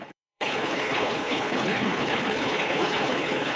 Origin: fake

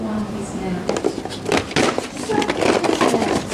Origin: real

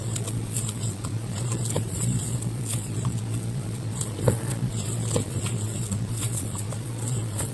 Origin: fake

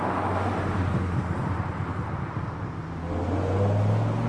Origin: real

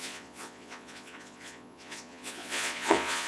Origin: fake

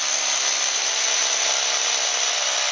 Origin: real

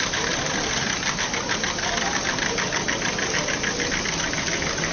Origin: real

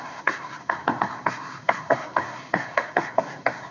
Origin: fake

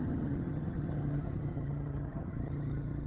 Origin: fake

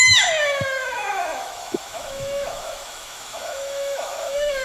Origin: fake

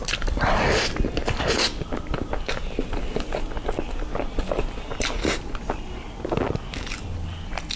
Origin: real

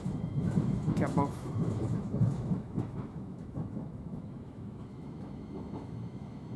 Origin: fake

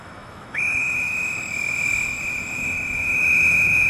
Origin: fake